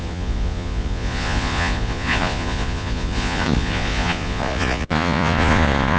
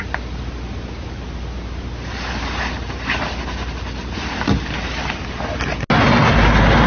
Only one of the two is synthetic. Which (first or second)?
first